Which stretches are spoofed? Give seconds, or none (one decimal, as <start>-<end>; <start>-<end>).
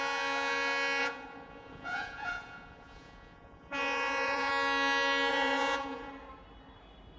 1.0-4.5; 5.3-6.1